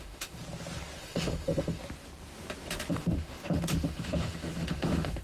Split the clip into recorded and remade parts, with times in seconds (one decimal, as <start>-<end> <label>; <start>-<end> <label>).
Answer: 0.0-0.4 remade; 0.4-1.0 recorded; 1.0-1.8 remade; 1.8-2.9 recorded; 2.9-5.2 remade